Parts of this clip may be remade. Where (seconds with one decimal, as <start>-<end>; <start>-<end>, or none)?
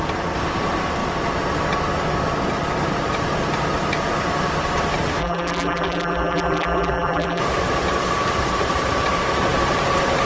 5.2-7.4